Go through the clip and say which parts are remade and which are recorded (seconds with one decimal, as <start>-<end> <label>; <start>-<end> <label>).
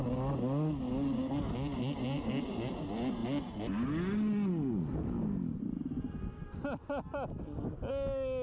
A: 0.0-8.4 recorded